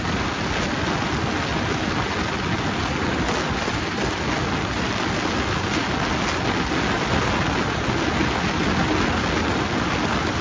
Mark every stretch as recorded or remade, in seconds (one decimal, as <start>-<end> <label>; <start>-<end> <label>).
0.0-10.4 recorded